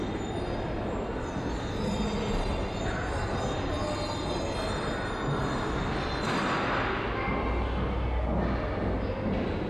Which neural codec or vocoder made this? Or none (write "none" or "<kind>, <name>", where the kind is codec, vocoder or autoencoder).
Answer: none